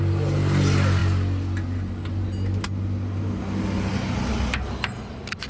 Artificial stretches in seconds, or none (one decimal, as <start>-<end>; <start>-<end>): none